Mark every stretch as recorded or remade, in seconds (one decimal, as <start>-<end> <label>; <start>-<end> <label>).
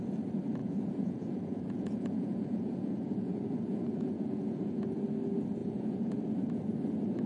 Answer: 0.0-0.6 recorded; 0.6-5.0 remade; 5.0-5.6 recorded; 5.6-6.2 remade; 6.2-7.3 recorded